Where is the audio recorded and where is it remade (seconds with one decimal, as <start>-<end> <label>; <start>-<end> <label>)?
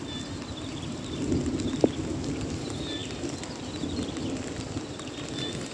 0.0-5.7 recorded